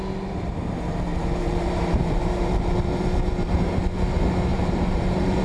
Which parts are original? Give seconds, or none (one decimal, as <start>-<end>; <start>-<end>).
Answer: 0.0-1.1; 3.8-4.5